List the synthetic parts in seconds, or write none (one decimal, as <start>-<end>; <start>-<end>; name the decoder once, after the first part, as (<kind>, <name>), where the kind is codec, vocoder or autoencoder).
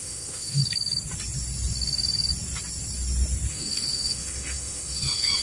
0.0-0.6 (autoencoder, DAC-VAE); 3.5-5.4